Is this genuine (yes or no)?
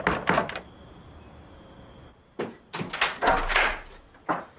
yes